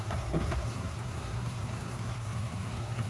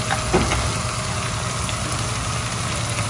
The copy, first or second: first